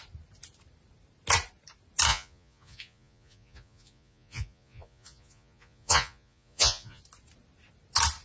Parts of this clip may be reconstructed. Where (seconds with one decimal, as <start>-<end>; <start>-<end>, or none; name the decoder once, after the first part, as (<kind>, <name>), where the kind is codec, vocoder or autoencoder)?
2.1-7.0 (vocoder, Vocos)